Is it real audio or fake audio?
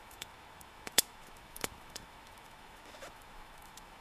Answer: fake